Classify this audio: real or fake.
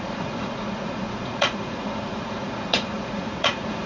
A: fake